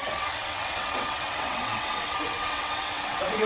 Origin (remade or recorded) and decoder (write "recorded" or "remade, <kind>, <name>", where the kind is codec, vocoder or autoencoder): remade, vocoder, WaveNeXt